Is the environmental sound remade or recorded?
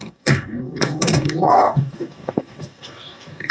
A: remade